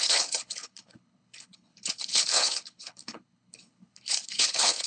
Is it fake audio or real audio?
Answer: fake